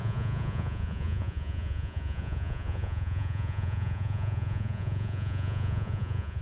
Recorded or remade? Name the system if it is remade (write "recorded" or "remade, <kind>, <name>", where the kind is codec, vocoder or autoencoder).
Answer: remade, vocoder, Vocos